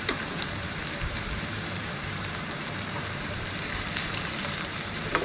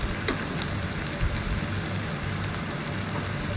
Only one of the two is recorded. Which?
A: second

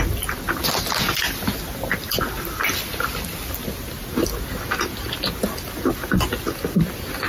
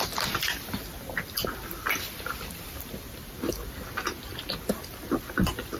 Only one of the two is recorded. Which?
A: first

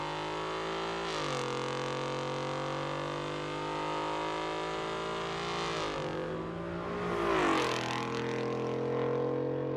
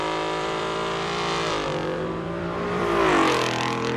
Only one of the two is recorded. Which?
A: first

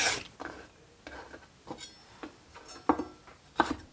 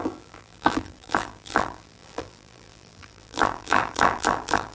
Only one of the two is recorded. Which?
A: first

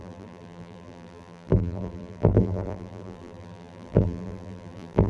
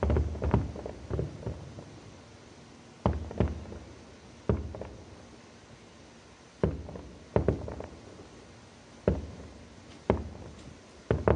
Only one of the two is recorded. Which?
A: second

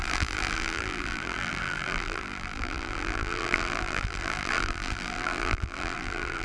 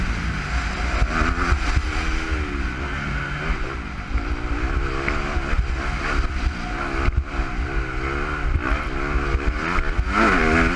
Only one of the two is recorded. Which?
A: second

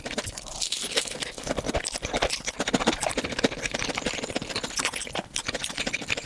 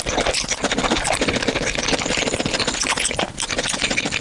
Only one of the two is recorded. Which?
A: second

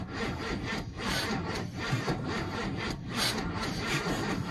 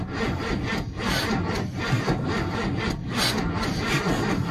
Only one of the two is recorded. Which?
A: second